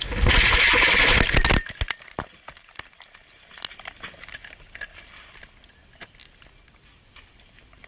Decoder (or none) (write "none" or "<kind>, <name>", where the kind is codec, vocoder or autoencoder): none